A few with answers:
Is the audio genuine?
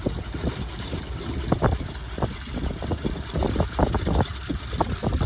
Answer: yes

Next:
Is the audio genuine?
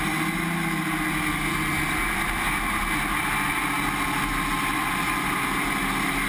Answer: yes